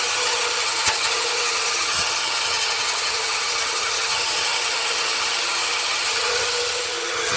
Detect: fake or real fake